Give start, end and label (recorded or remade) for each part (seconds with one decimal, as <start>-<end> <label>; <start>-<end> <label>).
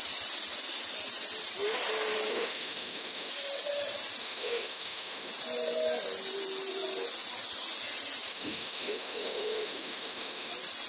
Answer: 0.0-2.3 recorded; 2.3-3.3 remade; 3.3-4.2 recorded; 4.2-5.3 remade; 5.3-8.3 recorded; 8.3-10.5 remade; 10.5-10.9 recorded